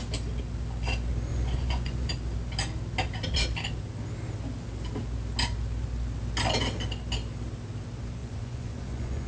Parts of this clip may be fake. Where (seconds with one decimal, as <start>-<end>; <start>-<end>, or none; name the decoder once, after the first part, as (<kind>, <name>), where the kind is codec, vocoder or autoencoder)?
1.3-2.1 (vocoder, Vocos); 8.2-9.3